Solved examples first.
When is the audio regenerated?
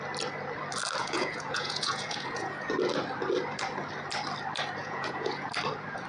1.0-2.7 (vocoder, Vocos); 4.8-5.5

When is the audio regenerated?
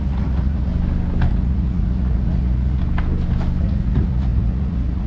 0.0-0.7 (vocoder, Vocos); 1.3-2.8; 3.6-5.1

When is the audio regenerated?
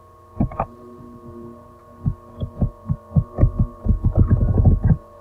none